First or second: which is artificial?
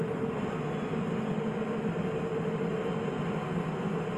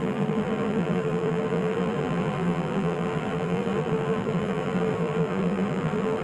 second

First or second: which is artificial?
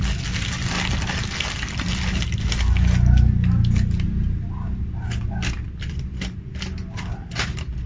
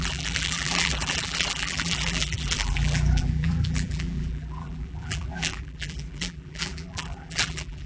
second